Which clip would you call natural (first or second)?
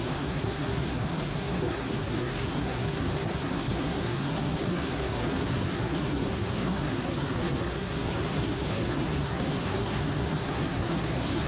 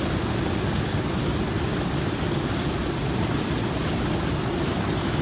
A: second